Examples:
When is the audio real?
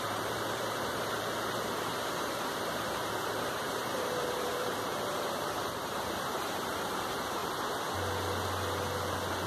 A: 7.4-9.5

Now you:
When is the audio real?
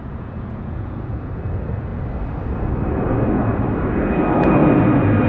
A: 1.3-5.3